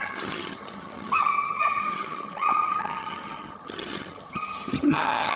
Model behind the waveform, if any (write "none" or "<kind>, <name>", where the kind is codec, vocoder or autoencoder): vocoder, HiFi-GAN